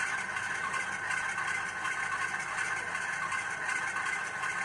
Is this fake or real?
real